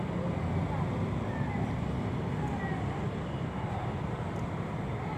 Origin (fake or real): real